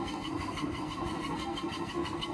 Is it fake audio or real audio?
fake